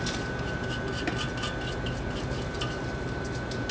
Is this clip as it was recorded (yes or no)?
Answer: yes